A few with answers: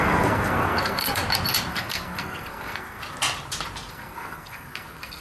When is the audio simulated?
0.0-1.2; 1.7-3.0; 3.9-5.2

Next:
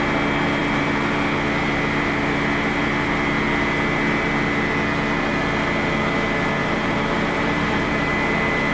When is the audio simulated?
6.6-8.1

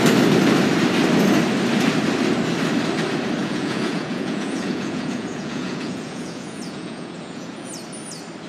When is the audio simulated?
3.4-7.7

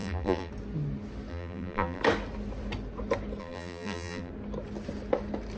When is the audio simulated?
0.0-0.5; 1.3-2.0; 3.4-4.3

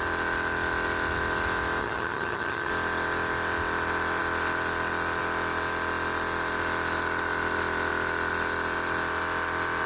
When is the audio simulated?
1.8-2.7

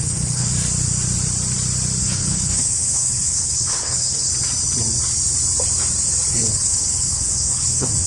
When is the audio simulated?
0.0-0.5; 2.0-4.3; 6.3-8.1

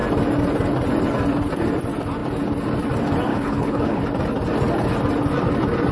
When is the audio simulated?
3.3-4.0